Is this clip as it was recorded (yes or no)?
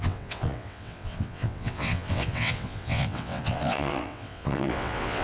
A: no